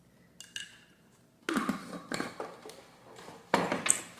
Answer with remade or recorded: recorded